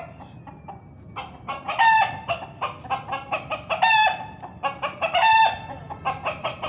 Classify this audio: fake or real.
real